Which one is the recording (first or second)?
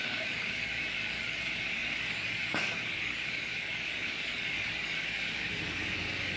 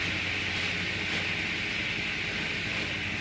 second